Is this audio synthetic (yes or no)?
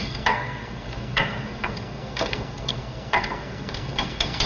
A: yes